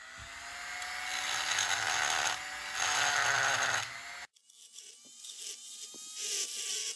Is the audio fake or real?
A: real